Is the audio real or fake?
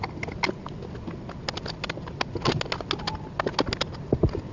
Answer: real